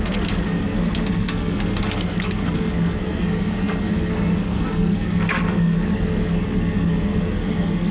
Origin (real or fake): fake